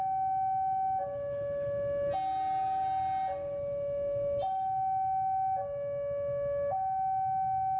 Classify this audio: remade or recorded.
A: recorded